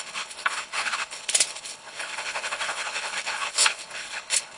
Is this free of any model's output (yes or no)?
no